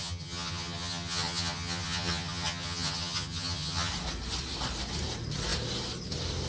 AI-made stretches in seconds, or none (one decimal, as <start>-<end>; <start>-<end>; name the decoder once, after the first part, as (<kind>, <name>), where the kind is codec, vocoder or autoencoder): 0.0-3.9 (vocoder, HiFi-GAN)